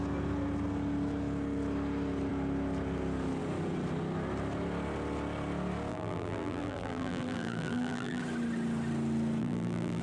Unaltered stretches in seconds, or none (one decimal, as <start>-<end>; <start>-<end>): 0.0-5.9; 8.2-9.4